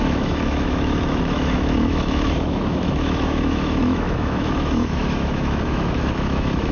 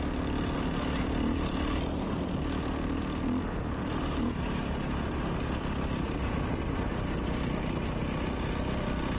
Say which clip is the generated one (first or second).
first